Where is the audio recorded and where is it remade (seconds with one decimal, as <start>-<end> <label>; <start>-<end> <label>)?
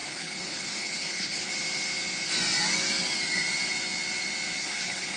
0.0-1.5 remade; 1.5-4.6 recorded; 4.6-5.2 remade